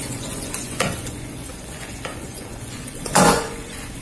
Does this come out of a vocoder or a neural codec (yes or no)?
yes